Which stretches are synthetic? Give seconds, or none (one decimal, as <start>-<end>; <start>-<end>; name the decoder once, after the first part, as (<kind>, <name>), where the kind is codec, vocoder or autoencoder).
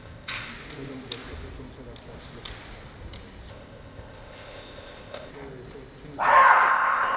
0.0-0.5 (codec, ZipCodec); 3.5-5.3; 6.7-7.2